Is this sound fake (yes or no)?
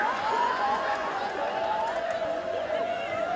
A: yes